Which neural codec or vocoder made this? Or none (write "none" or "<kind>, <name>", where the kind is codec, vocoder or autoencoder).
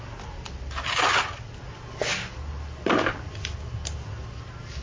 none